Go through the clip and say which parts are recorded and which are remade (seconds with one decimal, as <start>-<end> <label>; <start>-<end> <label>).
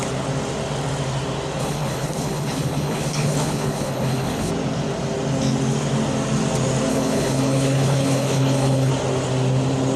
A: 0.0-1.6 recorded; 1.6-4.5 remade; 4.5-6.9 recorded; 6.9-8.9 remade; 8.9-10.0 recorded